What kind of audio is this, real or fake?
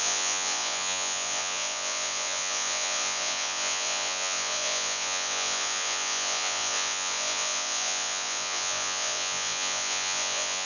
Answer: fake